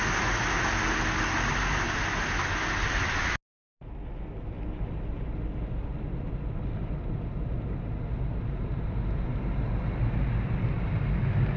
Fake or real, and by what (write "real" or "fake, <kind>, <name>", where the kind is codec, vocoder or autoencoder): real